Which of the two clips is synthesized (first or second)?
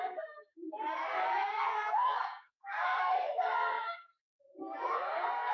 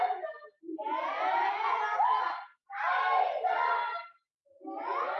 first